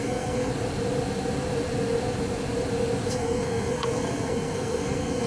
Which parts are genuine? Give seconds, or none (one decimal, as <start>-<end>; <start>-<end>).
0.5-3.1